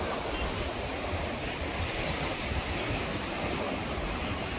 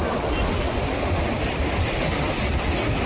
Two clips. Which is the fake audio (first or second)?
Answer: first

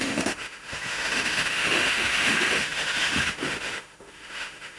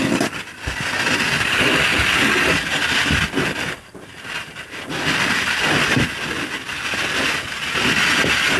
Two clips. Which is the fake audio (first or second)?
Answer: first